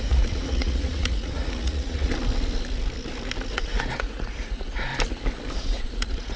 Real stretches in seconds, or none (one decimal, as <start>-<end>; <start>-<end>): 2.1-3.5; 4.9-5.6